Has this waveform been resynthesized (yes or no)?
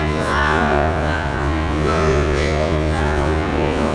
yes